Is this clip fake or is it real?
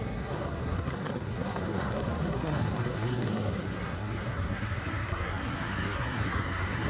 fake